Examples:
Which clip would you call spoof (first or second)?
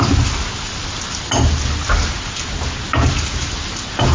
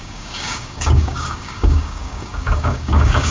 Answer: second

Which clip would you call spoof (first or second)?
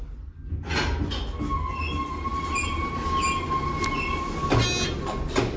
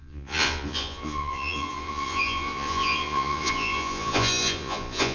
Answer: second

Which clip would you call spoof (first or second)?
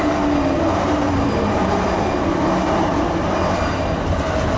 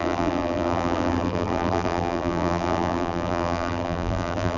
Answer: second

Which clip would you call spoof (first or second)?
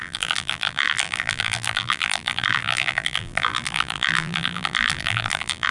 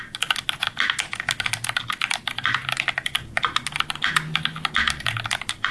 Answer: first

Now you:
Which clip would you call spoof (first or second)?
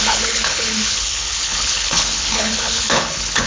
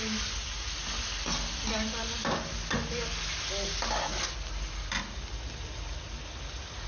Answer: first